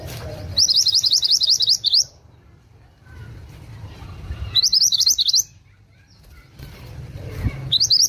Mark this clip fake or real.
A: fake